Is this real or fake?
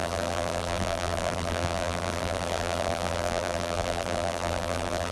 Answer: fake